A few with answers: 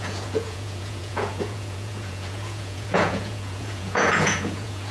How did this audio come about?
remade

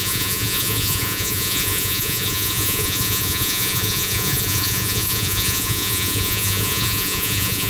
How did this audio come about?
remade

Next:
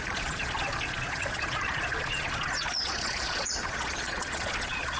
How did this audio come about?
remade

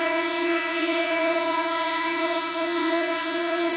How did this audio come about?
remade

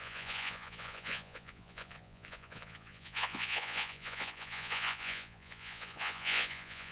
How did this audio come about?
remade